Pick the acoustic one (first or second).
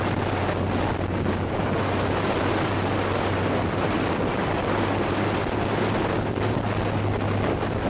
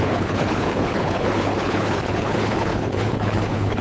first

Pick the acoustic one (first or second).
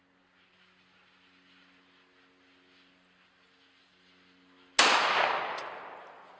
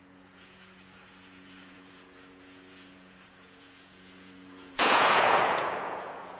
first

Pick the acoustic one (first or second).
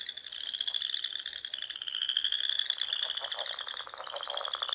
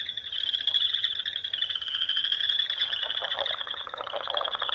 first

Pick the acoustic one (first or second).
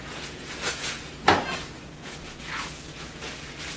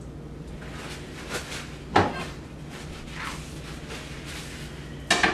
second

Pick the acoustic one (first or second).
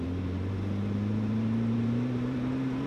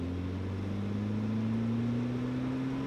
second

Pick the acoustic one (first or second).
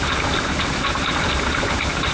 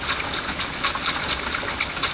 second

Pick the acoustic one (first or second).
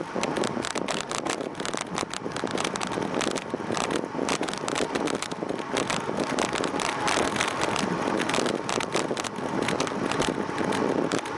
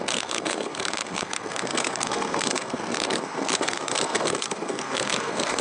first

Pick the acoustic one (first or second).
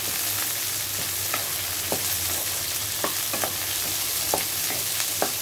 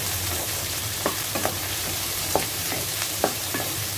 first